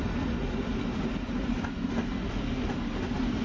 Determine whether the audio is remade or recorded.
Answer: recorded